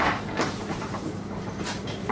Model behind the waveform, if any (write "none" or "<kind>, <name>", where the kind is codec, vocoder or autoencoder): vocoder, BigVGAN v2